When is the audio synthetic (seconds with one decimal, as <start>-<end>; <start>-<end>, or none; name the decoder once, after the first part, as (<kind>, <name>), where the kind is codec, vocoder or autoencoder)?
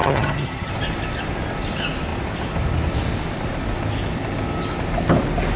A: 0.0-0.7 (vocoder, HiFi-GAN)